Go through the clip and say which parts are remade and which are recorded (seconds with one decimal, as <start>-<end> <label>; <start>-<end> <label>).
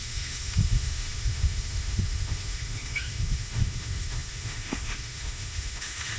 0.0-6.2 remade